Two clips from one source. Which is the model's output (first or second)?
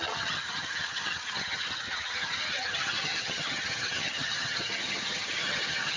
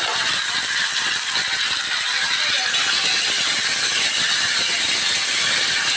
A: first